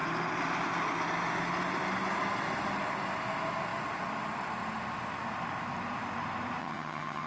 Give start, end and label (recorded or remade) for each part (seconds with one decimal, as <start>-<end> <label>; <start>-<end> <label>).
0.0-6.6 recorded; 6.6-7.3 remade